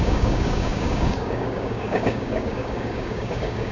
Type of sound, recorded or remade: remade